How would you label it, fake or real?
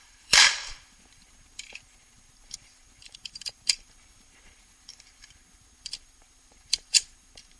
fake